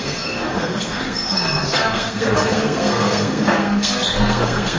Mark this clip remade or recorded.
remade